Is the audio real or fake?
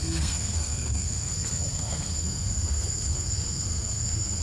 fake